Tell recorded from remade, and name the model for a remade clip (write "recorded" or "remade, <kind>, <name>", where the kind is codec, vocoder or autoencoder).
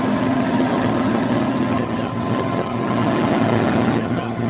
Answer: remade, vocoder, HiFi-GAN